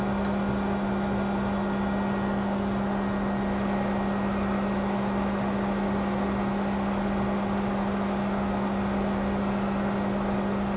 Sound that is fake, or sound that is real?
real